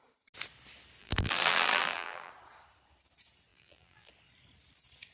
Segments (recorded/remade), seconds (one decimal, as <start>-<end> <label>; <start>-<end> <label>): 0.0-1.0 recorded; 1.0-2.3 remade; 2.3-3.5 recorded; 3.5-4.1 remade; 4.1-5.1 recorded